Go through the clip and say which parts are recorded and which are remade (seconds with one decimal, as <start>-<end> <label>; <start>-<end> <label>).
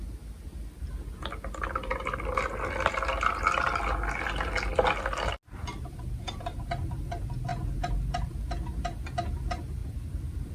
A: 0.0-7.5 recorded; 7.5-8.1 remade; 8.1-9.8 recorded; 9.8-10.5 remade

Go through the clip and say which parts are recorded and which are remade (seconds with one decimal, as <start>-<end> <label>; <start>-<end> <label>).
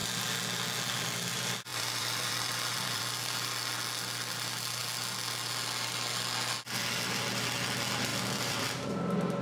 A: 0.0-1.7 recorded; 1.7-3.0 remade; 3.0-8.1 recorded; 8.1-8.9 remade; 8.9-9.4 recorded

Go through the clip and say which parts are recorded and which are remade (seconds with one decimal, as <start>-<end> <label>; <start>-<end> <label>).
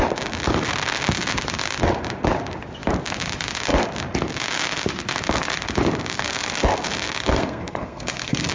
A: 0.0-7.3 recorded; 7.3-8.5 remade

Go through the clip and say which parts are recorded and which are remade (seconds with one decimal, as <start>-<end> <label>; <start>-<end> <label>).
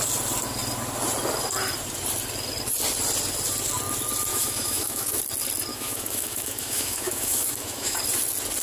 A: 0.0-4.3 recorded; 4.3-5.2 remade; 5.2-5.7 recorded; 5.7-8.0 remade; 8.0-8.6 recorded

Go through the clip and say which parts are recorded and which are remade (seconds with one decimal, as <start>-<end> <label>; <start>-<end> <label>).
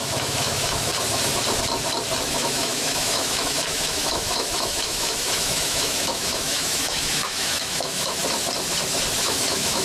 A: 0.0-0.9 remade; 0.9-2.2 recorded; 2.2-8.2 remade; 8.2-9.2 recorded; 9.2-9.8 remade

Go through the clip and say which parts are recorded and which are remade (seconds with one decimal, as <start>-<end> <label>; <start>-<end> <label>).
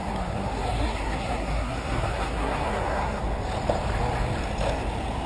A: 0.0-3.2 remade; 3.2-5.3 recorded